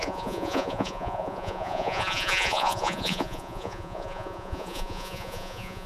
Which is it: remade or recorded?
remade